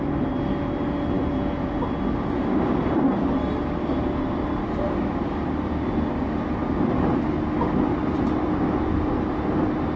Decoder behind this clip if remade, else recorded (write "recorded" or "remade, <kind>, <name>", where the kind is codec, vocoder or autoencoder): recorded